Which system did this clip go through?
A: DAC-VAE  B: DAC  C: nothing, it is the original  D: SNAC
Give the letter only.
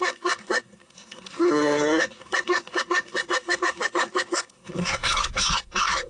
D